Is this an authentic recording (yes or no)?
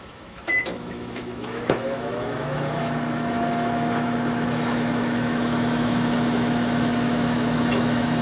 no